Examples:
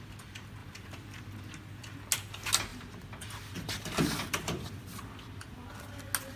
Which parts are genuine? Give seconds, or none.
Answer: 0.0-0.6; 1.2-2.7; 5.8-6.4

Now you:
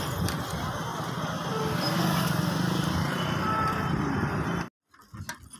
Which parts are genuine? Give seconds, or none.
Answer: 0.0-0.9; 4.3-5.6

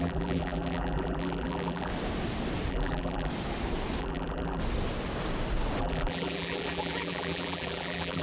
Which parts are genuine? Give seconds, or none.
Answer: 1.9-2.7; 3.3-4.0; 4.6-5.8

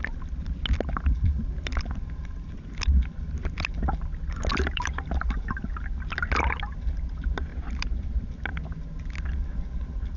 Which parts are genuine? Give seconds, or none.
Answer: 0.0-4.5; 5.0-7.5; 8.3-10.2

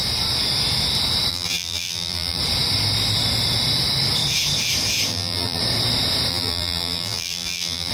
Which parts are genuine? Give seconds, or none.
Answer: 0.0-1.3; 2.4-5.1; 5.6-6.3

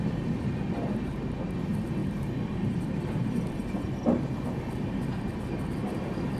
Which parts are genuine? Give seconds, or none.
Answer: 0.0-2.0; 3.5-6.4